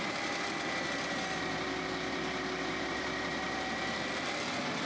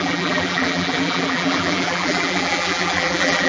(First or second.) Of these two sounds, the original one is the first